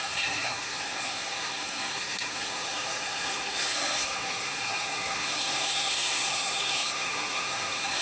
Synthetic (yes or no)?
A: yes